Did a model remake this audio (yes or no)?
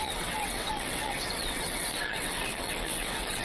yes